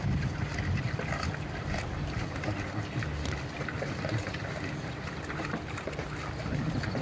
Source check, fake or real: fake